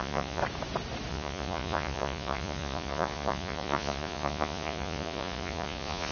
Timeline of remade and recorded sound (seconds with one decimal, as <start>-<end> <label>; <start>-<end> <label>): 0.0-0.4 remade; 0.4-1.1 recorded; 1.1-6.1 remade